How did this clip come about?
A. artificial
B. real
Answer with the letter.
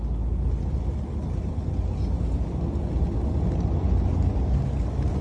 B